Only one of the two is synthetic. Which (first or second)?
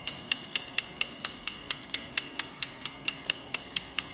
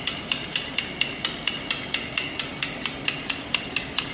first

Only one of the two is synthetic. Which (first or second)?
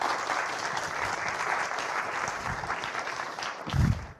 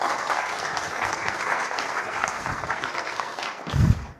second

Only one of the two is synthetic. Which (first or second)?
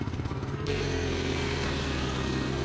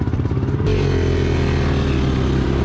first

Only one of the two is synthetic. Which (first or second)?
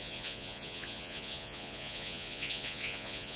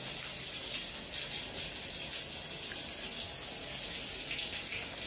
first